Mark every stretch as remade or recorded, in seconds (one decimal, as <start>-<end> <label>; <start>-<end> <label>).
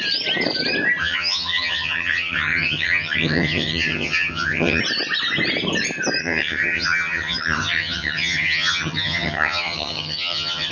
0.0-1.0 recorded; 1.0-4.8 remade; 4.8-6.2 recorded; 6.2-10.7 remade